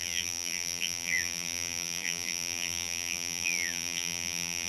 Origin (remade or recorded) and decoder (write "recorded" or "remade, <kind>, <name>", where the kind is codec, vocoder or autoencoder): remade, vocoder, BigVGAN v2